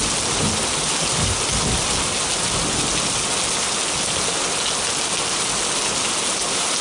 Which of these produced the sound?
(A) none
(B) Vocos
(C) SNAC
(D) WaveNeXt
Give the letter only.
A